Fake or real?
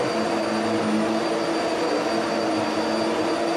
real